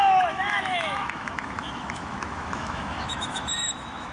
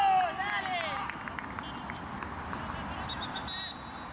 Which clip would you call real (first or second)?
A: second